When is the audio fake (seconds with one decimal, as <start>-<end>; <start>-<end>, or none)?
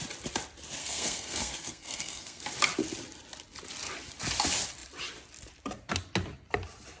0.8-2.4